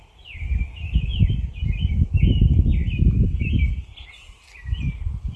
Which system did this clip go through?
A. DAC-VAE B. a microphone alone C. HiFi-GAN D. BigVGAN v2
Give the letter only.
B